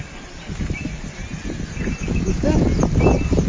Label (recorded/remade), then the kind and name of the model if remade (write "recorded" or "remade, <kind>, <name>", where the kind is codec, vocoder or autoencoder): recorded